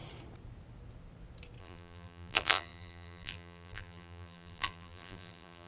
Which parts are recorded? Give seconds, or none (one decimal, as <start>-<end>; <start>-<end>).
0.0-1.6